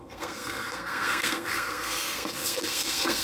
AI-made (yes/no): yes